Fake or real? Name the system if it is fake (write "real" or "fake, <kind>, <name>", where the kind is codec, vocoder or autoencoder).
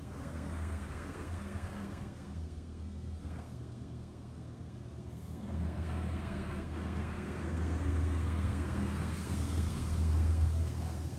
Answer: fake, codec, SNAC